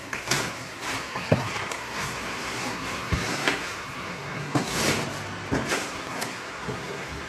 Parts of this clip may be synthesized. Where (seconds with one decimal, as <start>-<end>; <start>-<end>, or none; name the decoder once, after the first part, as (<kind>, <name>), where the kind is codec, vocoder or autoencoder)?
0.0-4.8 (codec, SNAC); 5.7-7.3